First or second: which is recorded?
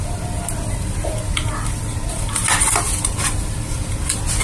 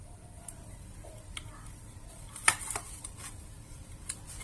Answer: first